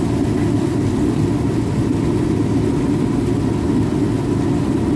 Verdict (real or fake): real